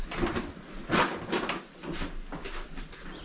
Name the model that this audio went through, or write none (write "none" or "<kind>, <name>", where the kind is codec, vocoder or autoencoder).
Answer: none